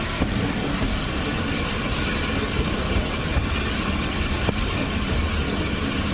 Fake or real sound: real